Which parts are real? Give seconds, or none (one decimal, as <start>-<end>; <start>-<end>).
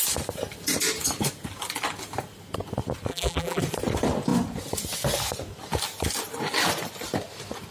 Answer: 0.0-3.1; 3.6-7.7